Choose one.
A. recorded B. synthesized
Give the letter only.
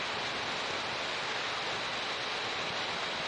A